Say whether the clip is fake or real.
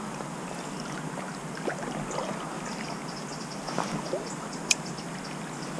real